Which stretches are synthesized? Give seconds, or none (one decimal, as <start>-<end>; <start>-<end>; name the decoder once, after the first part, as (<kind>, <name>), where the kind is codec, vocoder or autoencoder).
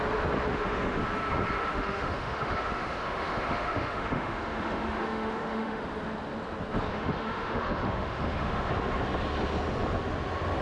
0.5-1.0 (autoencoder, DAC-VAE); 1.6-5.8; 6.9-8.7